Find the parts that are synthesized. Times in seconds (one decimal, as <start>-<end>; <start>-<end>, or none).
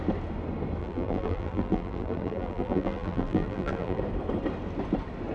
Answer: 0.8-4.0